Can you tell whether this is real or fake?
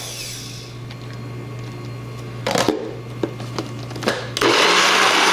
real